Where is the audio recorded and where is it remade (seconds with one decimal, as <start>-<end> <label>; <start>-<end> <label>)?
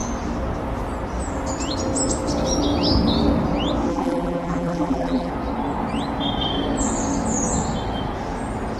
0.0-3.9 recorded; 3.9-5.3 remade; 5.3-8.8 recorded